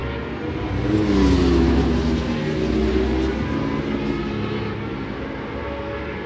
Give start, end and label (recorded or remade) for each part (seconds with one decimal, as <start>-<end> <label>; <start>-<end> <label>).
0.0-6.3 recorded